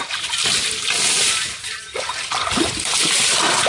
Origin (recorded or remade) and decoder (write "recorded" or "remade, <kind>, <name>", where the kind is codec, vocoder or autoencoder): recorded